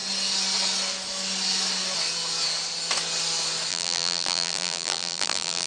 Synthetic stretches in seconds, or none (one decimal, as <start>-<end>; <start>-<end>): 3.7-5.7